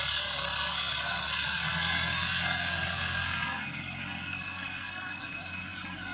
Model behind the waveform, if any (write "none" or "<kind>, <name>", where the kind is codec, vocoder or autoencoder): codec, SNAC